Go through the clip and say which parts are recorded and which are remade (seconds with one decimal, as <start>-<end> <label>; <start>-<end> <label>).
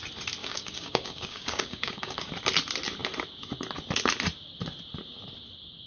0.0-0.4 recorded; 0.4-2.3 remade; 2.3-5.9 recorded